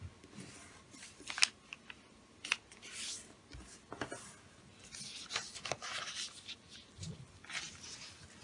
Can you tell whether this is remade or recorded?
recorded